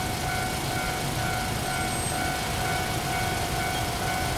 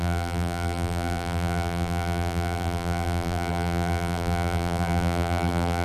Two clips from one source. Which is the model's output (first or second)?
second